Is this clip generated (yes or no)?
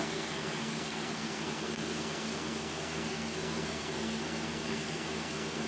yes